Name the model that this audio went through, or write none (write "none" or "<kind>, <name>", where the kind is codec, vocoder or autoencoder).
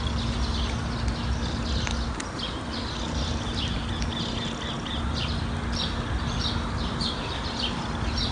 none